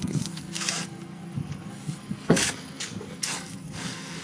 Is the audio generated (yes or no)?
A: yes